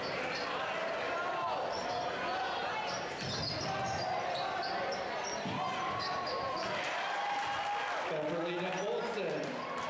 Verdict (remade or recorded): recorded